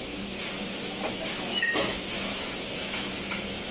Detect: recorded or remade remade